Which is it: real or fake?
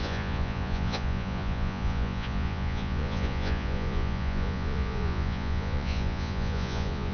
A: fake